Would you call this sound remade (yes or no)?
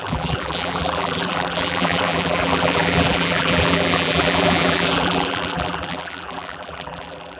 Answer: yes